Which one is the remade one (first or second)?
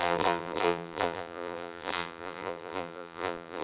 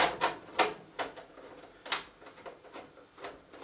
first